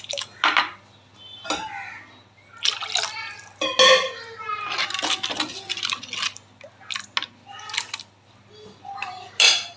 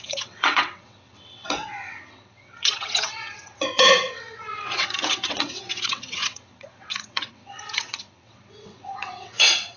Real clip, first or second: first